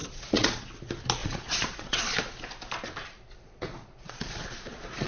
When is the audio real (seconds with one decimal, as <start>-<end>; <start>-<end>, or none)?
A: 0.7-1.2; 2.0-3.0